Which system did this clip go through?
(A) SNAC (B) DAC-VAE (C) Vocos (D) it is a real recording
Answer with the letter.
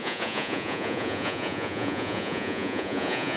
C